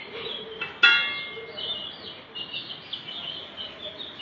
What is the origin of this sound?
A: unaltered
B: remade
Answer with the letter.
A